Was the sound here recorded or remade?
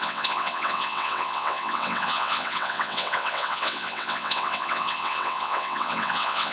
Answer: remade